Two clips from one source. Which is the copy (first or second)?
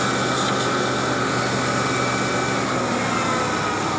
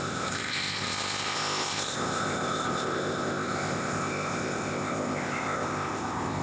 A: second